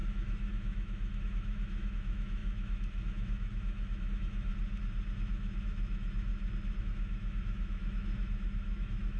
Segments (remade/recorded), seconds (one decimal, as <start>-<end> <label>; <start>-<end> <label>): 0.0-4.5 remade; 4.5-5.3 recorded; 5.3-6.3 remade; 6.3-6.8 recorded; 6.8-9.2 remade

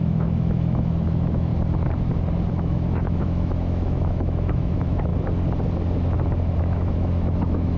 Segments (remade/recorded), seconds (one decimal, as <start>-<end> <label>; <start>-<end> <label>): 0.0-1.5 remade; 1.5-2.5 recorded; 2.5-5.1 remade; 5.1-6.6 recorded; 6.6-7.8 remade

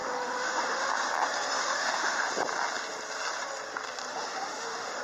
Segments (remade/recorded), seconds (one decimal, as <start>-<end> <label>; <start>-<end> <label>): 0.0-0.9 remade; 0.9-1.6 recorded; 1.6-2.2 remade; 2.2-4.1 recorded; 4.1-5.0 remade

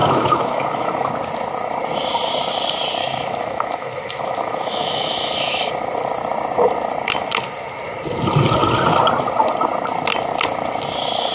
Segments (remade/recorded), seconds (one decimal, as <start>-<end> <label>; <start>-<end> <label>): 0.0-1.1 remade; 1.1-3.0 recorded; 3.0-5.7 remade; 5.7-11.3 recorded

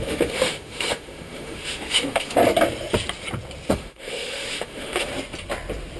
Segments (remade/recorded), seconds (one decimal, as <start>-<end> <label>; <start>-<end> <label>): 0.0-2.4 remade; 2.4-3.7 recorded; 3.7-5.1 remade; 5.1-6.0 recorded